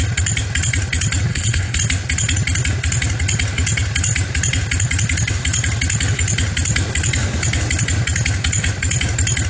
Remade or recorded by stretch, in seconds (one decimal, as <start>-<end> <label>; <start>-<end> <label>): 0.0-1.3 recorded; 1.3-1.8 remade; 1.8-9.5 recorded